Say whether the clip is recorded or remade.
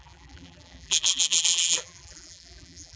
remade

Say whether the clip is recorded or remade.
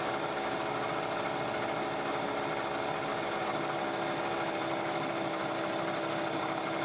recorded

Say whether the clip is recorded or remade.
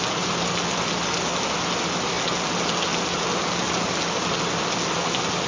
recorded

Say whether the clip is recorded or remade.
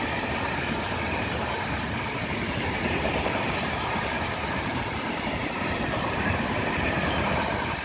remade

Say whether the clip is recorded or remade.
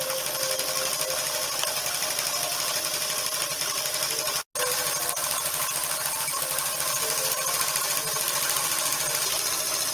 recorded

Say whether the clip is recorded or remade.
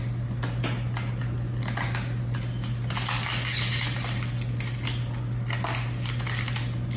recorded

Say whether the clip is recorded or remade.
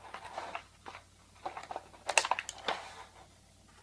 recorded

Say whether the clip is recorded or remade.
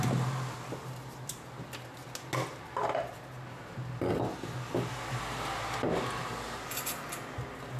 recorded